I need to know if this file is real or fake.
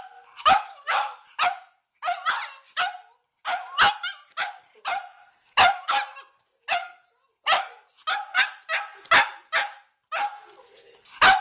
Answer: real